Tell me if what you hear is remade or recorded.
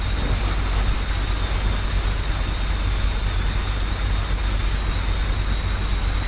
recorded